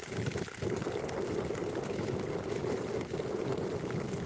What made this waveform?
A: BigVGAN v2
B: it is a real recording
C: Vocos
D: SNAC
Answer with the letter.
B